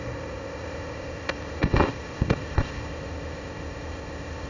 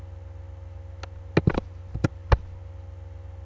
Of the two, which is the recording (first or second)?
second